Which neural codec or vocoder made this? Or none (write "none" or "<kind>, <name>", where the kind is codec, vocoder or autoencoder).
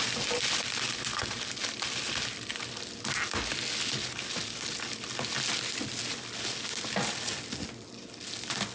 none